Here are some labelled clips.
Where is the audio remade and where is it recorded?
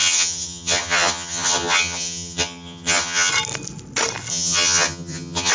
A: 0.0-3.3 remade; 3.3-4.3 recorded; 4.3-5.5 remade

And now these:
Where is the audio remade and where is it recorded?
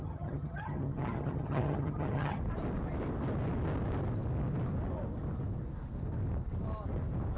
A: 0.0-2.4 remade; 2.4-7.4 recorded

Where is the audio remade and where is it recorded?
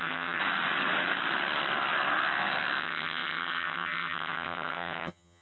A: 0.0-0.4 remade; 0.4-2.8 recorded; 2.8-5.4 remade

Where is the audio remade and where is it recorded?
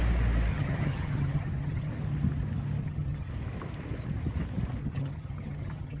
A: 0.0-0.5 recorded; 0.5-1.9 remade; 1.9-2.8 recorded; 2.8-3.3 remade; 3.3-4.8 recorded; 4.8-6.0 remade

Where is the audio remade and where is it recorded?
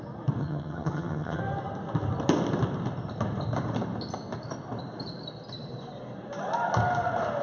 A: 0.0-0.4 recorded; 0.4-1.4 remade; 1.4-7.4 recorded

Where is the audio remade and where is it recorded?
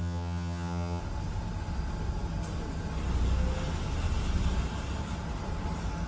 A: 0.0-1.0 remade; 1.0-6.1 recorded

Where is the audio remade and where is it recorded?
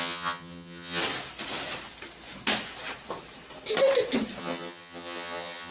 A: 0.0-1.0 remade; 1.0-4.4 recorded; 4.4-5.7 remade